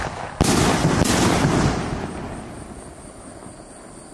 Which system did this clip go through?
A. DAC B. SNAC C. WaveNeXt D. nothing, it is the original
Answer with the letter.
D